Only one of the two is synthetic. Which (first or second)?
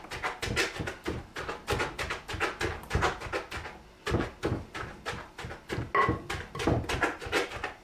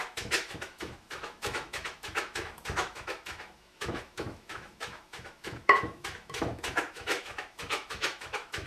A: second